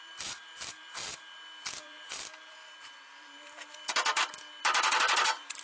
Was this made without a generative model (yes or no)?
no